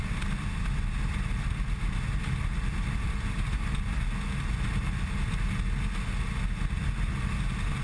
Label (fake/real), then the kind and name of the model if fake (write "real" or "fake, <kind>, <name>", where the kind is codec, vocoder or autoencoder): real